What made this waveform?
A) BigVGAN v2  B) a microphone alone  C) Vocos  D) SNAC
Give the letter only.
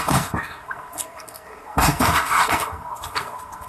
D